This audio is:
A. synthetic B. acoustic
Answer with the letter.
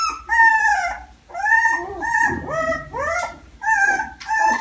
B